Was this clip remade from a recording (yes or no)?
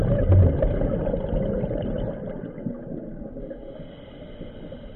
no